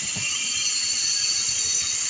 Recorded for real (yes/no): yes